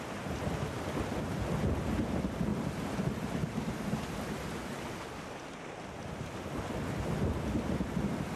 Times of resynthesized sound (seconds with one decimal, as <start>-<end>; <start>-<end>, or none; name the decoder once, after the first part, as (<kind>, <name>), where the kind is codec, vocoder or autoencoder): none